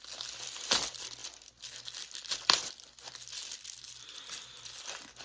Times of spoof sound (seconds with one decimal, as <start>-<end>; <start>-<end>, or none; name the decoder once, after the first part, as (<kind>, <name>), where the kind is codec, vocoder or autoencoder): none